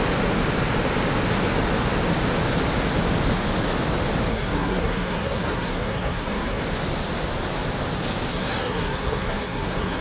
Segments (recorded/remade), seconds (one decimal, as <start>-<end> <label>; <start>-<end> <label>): 0.0-4.3 recorded; 4.3-6.6 remade; 6.6-8.3 recorded; 8.3-10.0 remade